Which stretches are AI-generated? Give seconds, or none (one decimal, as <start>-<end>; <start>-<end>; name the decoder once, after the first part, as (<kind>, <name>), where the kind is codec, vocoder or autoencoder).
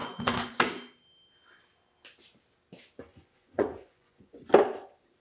0.0-0.6 (vocoder, Vocos); 3.1-4.5